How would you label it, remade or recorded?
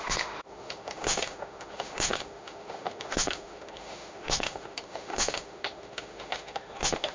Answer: remade